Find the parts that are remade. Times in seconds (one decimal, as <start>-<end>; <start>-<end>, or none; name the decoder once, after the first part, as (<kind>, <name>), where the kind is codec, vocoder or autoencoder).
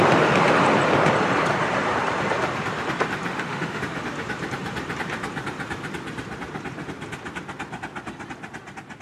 3.3-3.8 (autoencoder, DAC-VAE)